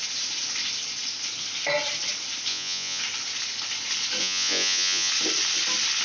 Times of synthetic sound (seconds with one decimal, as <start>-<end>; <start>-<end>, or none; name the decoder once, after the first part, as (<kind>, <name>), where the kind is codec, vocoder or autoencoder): 2.5-3.0 (vocoder, Vocos); 4.2-5.1